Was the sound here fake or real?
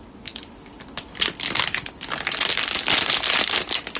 real